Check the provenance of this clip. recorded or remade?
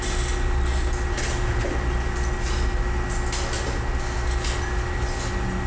recorded